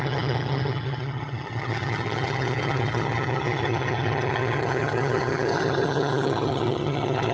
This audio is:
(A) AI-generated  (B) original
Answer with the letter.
A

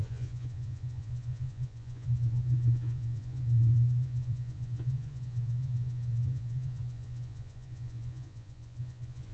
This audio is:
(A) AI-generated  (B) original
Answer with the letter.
A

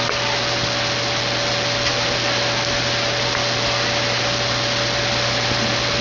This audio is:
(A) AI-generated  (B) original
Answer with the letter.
B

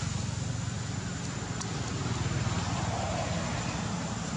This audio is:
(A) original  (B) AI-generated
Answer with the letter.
A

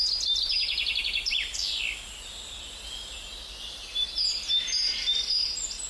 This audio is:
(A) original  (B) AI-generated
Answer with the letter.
A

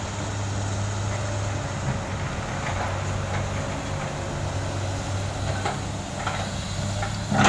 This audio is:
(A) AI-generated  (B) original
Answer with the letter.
B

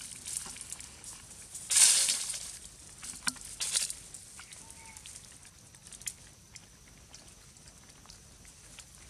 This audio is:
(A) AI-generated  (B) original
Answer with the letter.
B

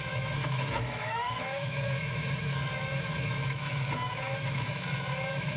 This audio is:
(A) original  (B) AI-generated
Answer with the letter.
B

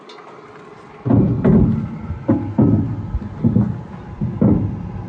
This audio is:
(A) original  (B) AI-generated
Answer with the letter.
A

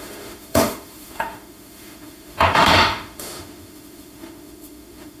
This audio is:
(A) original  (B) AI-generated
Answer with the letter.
B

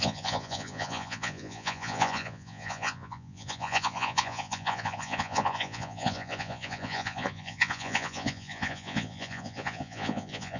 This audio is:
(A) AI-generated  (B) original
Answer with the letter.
A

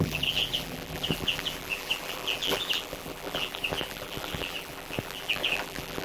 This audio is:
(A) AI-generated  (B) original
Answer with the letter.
A